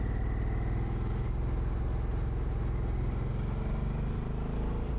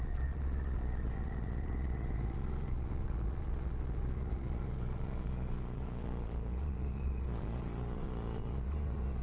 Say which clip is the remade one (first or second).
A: second